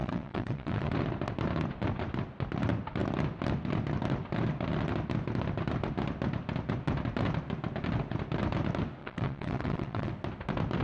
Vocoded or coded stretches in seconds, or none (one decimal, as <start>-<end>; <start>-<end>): 0.0-0.9; 9.0-10.1